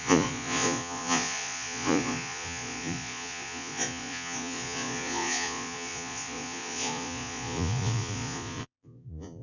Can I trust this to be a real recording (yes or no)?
no